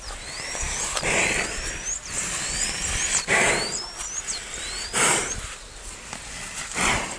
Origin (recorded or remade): remade